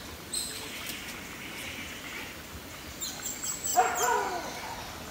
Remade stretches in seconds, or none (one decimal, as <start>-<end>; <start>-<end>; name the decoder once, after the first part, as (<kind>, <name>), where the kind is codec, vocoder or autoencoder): 0.0-3.7 (vocoder, BigVGAN v2)